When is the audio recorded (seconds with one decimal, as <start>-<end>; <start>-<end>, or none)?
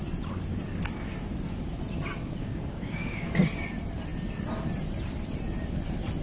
0.0-2.4; 3.3-6.2